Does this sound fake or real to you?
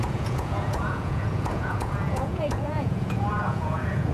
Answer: fake